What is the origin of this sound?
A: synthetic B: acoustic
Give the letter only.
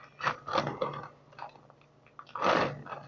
B